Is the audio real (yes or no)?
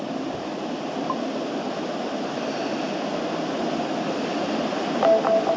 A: yes